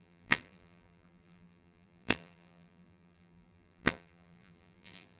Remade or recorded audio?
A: remade